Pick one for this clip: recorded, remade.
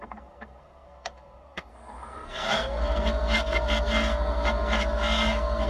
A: remade